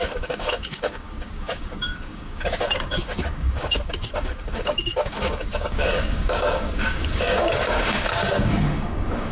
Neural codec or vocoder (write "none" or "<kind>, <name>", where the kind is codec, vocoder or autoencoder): codec, DAC